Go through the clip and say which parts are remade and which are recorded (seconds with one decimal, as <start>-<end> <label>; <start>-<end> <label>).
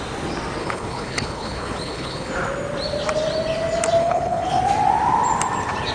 0.0-0.6 recorded; 0.6-2.3 remade; 2.3-4.0 recorded; 4.0-4.6 remade; 4.6-5.9 recorded